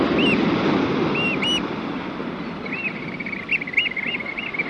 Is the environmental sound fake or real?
real